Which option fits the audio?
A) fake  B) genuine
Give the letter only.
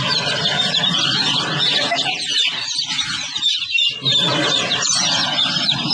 B